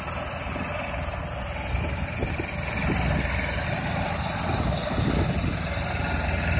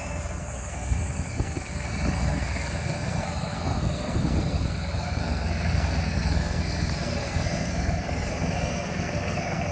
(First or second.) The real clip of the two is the first